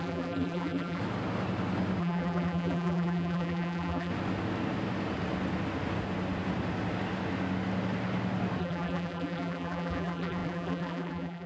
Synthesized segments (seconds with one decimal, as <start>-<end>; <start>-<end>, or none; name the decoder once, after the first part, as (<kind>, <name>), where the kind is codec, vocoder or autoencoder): 0.0-1.0 (vocoder, BigVGAN v2); 2.0-4.1; 8.6-11.5